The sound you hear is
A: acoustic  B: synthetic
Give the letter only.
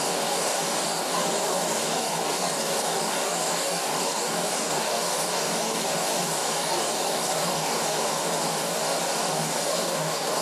B